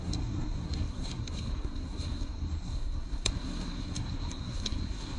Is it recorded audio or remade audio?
remade